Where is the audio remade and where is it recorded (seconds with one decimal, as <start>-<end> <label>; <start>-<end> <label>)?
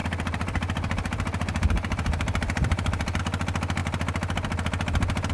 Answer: 0.0-3.2 remade; 3.2-5.3 recorded